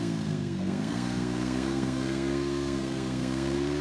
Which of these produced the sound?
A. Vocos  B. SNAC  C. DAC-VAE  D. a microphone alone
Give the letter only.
B